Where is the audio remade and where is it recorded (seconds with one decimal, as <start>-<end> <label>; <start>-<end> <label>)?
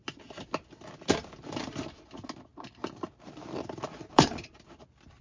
0.0-2.5 recorded; 2.5-4.5 remade; 4.5-5.2 recorded